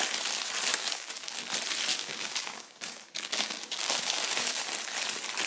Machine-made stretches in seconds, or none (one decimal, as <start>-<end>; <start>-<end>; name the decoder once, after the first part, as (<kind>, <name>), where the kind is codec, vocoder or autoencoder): 0.7-1.4 (codec, DAC); 1.9-4.6